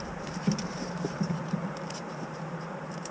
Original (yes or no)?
no